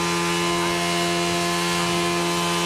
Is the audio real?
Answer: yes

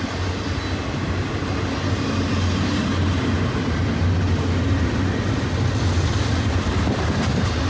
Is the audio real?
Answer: yes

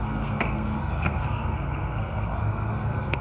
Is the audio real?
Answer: no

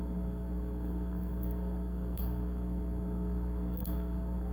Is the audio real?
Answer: no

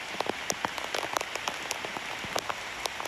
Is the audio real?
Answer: yes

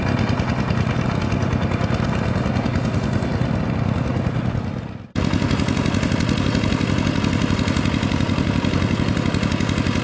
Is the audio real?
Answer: yes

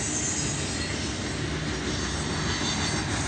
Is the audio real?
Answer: yes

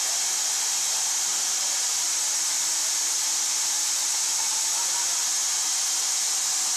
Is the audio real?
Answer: yes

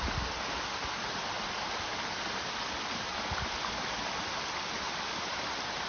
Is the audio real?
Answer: yes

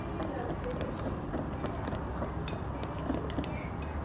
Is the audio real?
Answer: yes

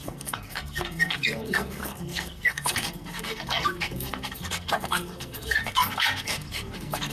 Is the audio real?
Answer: no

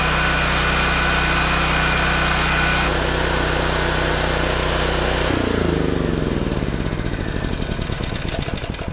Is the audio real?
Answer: yes